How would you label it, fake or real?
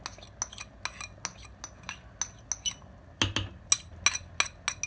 real